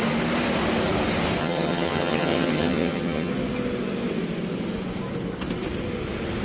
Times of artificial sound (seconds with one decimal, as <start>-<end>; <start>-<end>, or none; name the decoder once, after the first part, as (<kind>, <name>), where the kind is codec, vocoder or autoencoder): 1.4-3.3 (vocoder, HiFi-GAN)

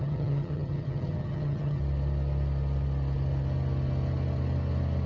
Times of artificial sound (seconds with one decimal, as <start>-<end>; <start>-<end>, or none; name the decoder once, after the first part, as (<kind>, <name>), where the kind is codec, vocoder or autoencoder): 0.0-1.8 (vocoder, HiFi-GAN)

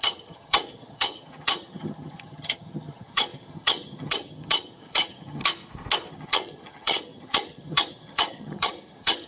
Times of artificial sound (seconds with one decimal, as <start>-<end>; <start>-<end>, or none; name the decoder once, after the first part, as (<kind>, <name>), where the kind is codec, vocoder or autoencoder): 0.0-5.4 (vocoder, HiFi-GAN); 6.1-9.3